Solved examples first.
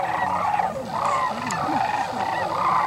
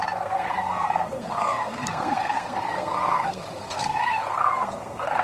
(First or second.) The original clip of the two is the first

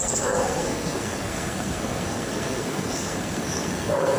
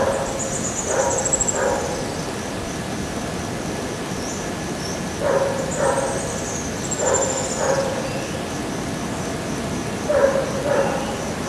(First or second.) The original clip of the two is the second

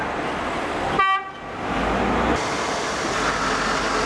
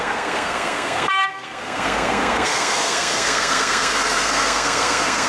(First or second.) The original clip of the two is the first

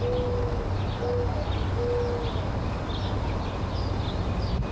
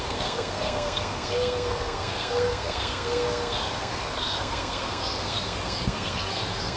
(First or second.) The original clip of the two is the first